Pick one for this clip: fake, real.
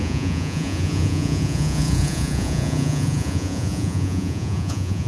fake